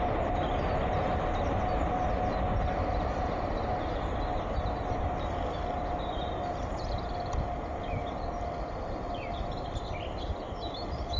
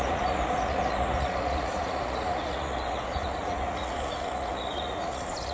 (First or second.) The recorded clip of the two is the first